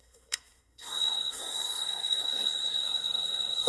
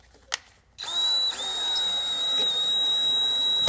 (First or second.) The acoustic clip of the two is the second